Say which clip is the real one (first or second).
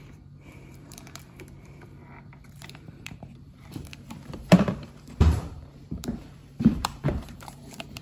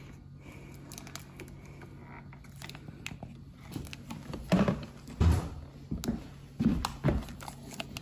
second